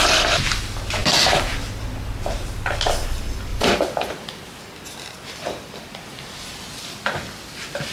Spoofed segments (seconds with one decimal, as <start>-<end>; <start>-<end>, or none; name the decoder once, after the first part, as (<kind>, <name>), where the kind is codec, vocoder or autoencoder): 3.5-4.6 (vocoder, BigVGAN v2); 6.5-7.9